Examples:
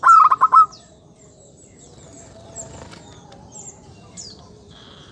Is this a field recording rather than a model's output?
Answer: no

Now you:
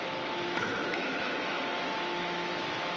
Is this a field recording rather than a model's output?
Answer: no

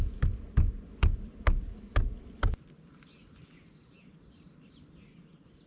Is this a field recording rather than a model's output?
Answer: yes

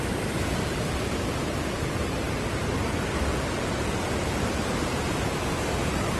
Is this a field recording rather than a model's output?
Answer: no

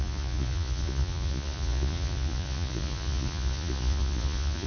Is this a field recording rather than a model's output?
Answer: no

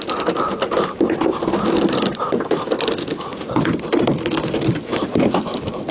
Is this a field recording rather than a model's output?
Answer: yes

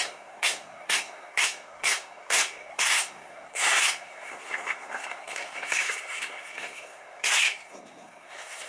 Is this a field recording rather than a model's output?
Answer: no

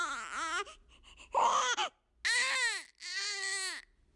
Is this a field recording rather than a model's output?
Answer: yes